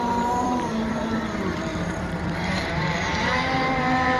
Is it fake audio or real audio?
fake